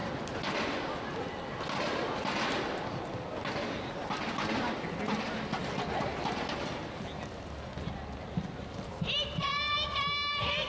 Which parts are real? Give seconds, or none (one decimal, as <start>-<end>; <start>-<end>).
0.0-10.7